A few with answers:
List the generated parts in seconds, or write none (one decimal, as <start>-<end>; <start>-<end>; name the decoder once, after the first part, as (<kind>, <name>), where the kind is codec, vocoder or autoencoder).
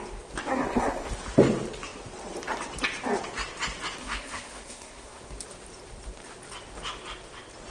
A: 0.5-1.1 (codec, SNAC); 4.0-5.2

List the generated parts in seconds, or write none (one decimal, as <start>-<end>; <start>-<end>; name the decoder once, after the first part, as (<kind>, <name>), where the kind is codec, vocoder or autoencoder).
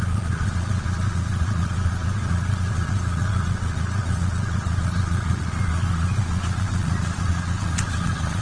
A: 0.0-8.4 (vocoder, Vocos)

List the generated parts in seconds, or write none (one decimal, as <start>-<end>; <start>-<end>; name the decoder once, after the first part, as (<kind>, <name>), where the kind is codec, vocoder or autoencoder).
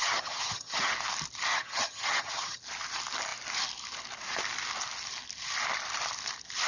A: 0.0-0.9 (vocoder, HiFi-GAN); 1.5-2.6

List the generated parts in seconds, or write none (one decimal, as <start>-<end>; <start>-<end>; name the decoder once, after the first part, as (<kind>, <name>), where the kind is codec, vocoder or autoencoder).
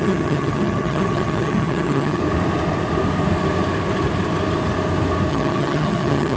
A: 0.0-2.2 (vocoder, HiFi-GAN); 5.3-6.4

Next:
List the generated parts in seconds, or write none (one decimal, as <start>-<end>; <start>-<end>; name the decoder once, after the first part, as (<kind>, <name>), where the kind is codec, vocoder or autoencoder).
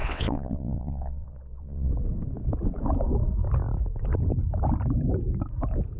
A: 0.0-1.9 (vocoder, WaveNeXt)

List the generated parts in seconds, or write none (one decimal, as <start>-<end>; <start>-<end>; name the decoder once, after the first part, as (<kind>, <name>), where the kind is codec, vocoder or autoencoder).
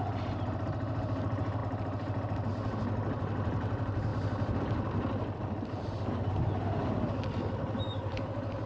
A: none